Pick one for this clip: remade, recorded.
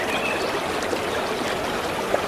recorded